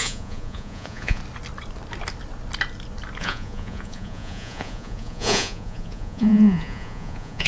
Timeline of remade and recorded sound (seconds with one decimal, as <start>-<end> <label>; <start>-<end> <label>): 0.0-1.2 remade; 1.2-3.2 recorded; 3.2-7.5 remade